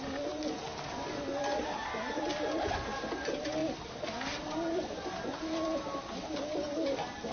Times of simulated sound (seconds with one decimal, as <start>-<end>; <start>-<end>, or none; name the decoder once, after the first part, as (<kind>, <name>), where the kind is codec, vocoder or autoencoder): none